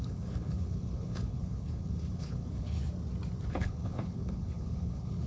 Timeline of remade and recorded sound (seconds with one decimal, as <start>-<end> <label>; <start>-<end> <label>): 0.0-2.8 remade; 2.8-3.5 recorded; 3.5-5.3 remade